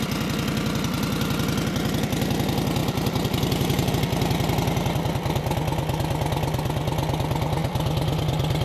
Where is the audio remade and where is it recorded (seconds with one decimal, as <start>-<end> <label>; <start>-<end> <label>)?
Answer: 0.0-2.8 recorded; 2.8-3.9 remade; 3.9-8.6 recorded